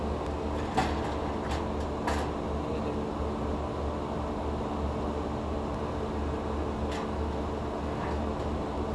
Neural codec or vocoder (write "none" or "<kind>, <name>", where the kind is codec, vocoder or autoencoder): none